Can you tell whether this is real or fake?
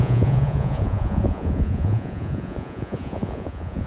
fake